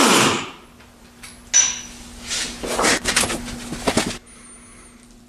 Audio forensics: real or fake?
real